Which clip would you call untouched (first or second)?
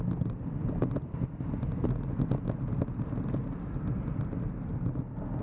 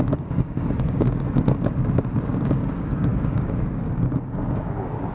first